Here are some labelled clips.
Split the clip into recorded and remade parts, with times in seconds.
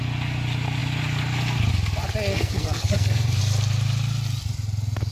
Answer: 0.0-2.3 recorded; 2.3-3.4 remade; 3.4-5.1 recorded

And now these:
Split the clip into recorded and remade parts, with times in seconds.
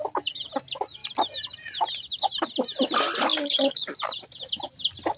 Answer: 0.0-5.2 recorded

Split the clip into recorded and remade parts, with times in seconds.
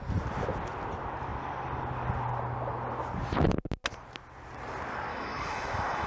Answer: 0.0-5.1 recorded; 5.1-6.1 remade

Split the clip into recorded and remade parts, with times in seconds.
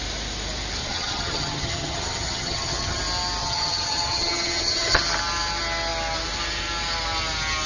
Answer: 0.0-0.8 recorded; 0.8-3.0 remade; 3.0-3.4 recorded; 3.4-5.0 remade; 5.0-7.7 recorded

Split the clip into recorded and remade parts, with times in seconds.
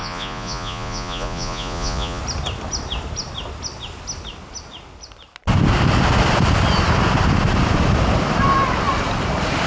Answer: 0.0-2.2 remade; 2.2-9.7 recorded